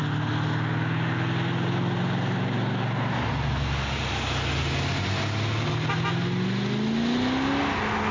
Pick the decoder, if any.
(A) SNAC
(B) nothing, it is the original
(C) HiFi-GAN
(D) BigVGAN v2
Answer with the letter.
B